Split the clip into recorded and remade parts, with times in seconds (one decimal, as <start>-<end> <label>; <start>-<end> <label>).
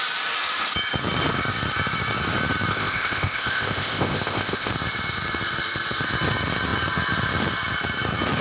0.0-2.7 recorded; 2.7-4.7 remade; 4.7-8.4 recorded